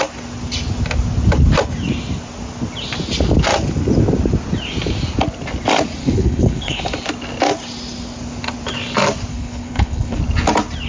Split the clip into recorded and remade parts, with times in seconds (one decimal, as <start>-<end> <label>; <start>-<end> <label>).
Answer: 0.0-6.0 recorded; 6.0-6.8 remade; 6.8-9.3 recorded; 9.3-10.2 remade; 10.2-10.9 recorded